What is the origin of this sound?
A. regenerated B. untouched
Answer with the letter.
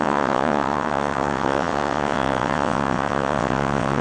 A